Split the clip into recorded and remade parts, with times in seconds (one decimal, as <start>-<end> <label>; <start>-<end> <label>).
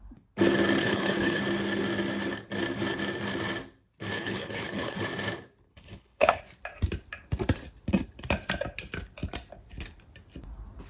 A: 0.0-0.8 recorded; 0.8-1.4 remade; 1.4-4.1 recorded; 4.1-5.0 remade; 5.0-5.7 recorded; 5.7-6.4 remade; 6.4-10.9 recorded